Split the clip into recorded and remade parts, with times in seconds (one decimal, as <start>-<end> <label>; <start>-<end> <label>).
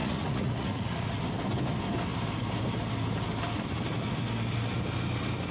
0.0-1.2 remade; 1.2-5.5 recorded